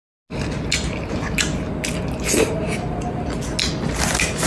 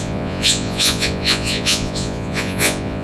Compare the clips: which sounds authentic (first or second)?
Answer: first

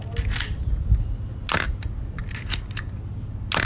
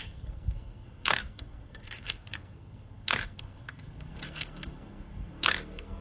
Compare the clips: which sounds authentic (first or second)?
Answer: first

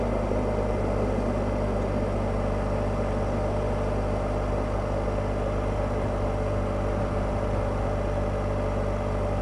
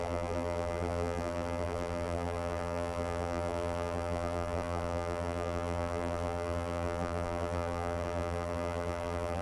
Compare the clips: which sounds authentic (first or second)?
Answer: first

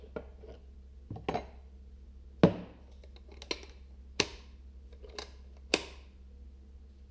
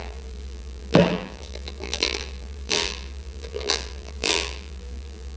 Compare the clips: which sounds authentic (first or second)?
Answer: first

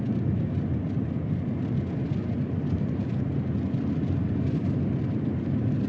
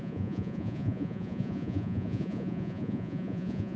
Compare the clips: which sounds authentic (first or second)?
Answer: first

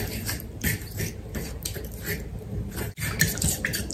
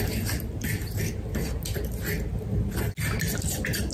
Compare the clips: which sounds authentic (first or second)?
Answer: second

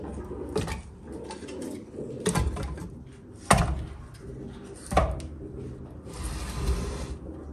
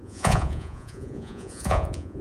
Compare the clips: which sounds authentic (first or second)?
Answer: first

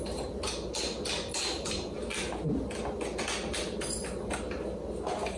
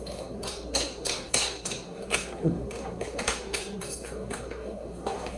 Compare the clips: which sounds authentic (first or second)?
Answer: first